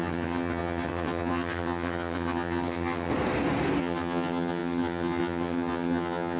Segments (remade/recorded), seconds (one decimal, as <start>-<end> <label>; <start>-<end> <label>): 0.0-3.1 remade; 3.1-3.8 recorded; 3.8-6.4 remade